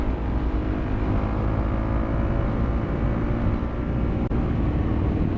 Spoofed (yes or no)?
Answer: no